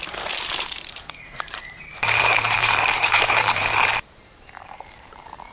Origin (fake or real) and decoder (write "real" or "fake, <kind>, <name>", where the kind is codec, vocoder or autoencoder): fake, vocoder, BigVGAN v2